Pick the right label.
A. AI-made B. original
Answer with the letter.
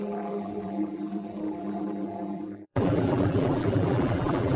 A